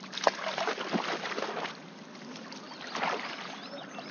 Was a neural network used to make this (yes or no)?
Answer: no